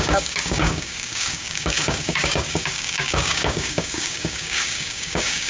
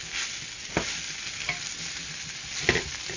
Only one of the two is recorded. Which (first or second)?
second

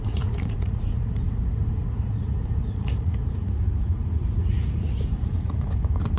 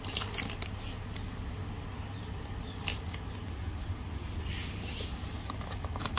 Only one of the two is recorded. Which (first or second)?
second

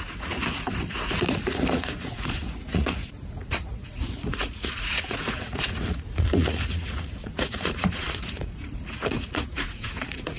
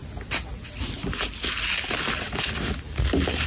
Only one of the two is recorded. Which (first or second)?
second